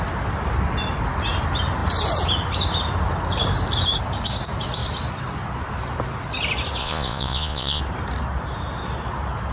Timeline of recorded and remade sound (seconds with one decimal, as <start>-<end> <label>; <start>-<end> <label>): 0.0-6.8 recorded; 6.8-7.8 remade; 7.8-9.5 recorded